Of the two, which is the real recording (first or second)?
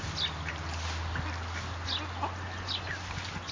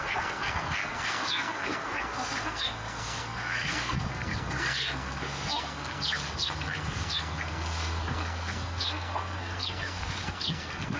first